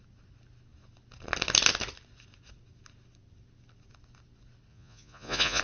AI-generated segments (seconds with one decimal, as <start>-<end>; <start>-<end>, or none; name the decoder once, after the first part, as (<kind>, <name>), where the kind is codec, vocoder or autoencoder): 4.7-5.6 (vocoder, Vocos)